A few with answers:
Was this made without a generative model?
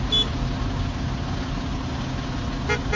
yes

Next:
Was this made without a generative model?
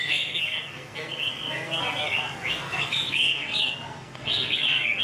no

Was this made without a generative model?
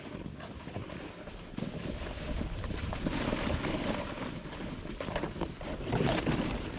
yes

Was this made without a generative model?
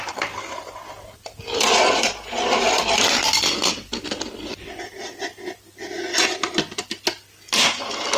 yes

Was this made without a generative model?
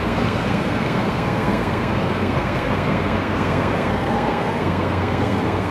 no